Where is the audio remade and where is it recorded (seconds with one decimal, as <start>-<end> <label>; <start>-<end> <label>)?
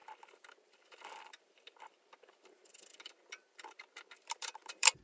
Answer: 0.0-5.0 remade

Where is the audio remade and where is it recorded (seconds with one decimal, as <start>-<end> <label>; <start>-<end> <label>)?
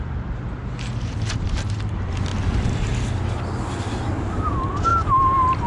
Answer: 0.0-5.7 recorded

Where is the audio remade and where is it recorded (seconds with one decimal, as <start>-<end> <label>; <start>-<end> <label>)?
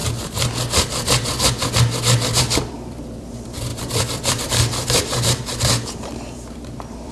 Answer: 0.0-2.6 recorded; 2.6-7.1 remade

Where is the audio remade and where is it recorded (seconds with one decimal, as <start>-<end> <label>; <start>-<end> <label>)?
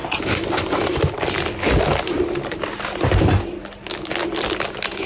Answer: 0.0-5.1 recorded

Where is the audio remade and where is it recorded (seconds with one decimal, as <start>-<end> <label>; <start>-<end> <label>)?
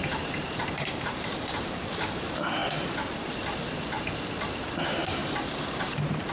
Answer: 0.0-2.6 remade; 2.6-4.5 recorded; 4.5-6.3 remade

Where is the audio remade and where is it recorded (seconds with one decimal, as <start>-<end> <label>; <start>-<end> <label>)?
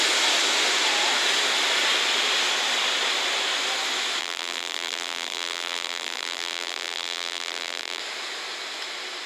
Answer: 0.0-4.2 recorded; 4.2-8.0 remade; 8.0-9.3 recorded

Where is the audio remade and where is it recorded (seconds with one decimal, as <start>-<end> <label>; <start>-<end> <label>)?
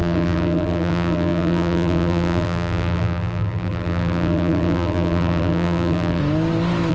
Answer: 0.0-6.2 remade; 6.2-6.9 recorded